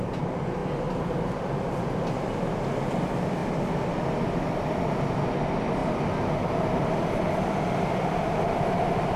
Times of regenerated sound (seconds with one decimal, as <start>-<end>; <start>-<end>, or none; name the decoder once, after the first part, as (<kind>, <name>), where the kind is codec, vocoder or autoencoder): none